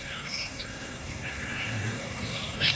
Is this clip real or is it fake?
fake